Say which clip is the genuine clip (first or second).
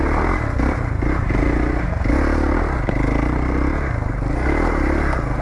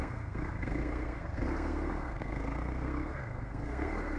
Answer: first